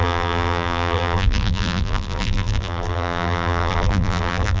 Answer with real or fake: fake